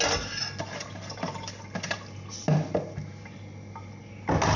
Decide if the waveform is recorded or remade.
recorded